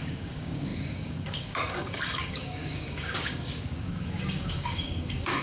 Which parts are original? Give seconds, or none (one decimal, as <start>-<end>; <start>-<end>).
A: none